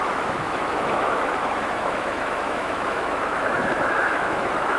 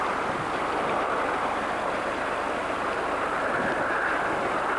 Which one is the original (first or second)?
second